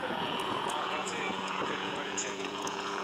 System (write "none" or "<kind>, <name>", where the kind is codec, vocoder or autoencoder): vocoder, Vocos